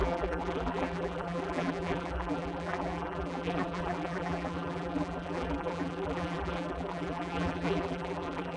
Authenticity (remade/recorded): remade